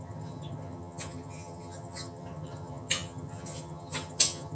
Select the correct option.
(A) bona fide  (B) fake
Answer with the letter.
B